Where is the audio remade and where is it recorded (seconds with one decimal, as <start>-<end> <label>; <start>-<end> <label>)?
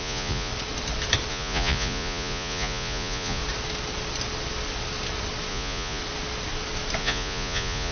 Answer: 0.0-0.5 remade; 0.5-1.3 recorded; 1.3-3.4 remade; 3.4-5.5 recorded; 5.5-6.0 remade; 6.0-7.0 recorded; 7.0-7.9 remade